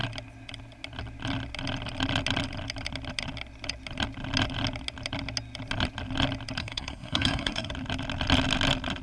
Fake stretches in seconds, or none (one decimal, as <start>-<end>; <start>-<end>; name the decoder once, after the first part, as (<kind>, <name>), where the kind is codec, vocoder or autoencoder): 6.6-7.7 (codec, SNAC)